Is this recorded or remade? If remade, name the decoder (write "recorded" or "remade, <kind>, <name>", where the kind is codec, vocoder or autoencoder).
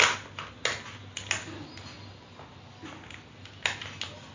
recorded